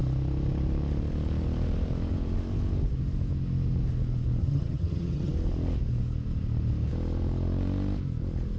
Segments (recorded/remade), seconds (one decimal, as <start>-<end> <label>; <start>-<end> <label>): 0.0-4.4 recorded; 4.4-5.3 remade; 5.3-8.6 recorded